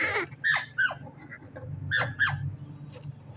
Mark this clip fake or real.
real